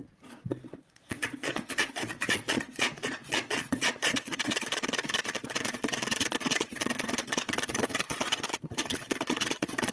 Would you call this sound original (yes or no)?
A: no